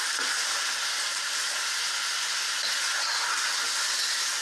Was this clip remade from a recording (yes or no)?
no